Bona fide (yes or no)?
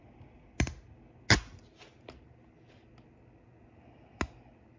yes